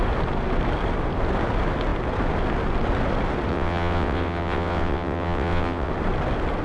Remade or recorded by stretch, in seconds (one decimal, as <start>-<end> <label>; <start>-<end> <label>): 0.0-3.5 recorded; 3.5-5.9 remade; 5.9-6.6 recorded